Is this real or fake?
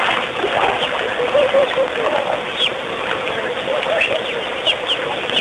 real